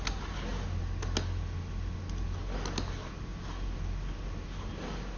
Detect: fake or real real